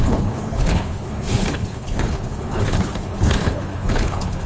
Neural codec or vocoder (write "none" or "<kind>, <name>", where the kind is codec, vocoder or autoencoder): codec, HILCodec